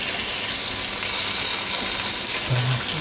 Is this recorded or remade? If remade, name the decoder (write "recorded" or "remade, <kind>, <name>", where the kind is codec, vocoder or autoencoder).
recorded